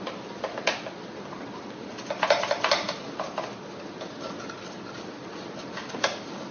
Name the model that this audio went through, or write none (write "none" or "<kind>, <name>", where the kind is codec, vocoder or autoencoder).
none